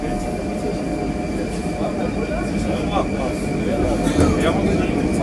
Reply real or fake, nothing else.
real